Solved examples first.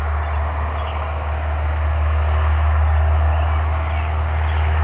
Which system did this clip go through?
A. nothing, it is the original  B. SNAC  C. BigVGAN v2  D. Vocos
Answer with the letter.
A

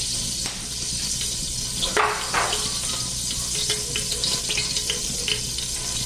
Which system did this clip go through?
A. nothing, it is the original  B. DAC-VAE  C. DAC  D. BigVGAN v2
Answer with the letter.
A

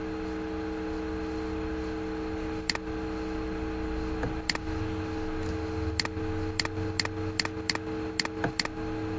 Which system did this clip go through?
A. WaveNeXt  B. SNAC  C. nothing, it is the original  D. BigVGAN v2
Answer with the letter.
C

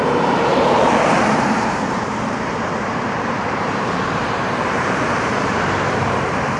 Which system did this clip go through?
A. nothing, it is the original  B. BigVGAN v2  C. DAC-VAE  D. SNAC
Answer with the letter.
B